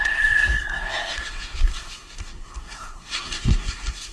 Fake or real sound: fake